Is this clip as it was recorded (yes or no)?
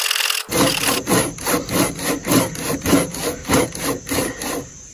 yes